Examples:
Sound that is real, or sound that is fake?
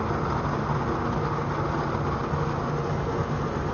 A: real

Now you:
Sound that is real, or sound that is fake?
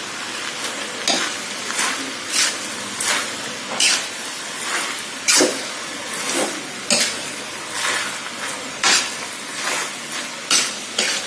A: real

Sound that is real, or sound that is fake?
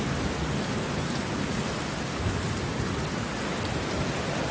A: real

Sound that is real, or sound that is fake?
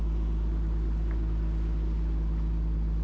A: real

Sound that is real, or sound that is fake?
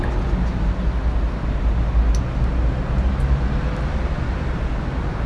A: real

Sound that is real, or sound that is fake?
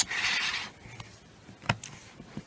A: real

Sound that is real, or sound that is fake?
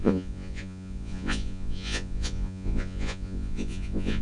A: fake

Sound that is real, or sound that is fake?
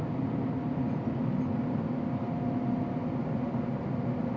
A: real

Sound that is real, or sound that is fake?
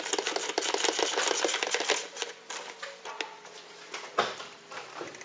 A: real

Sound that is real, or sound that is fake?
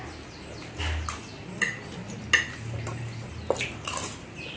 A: real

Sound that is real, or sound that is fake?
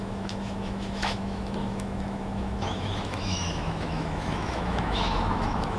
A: fake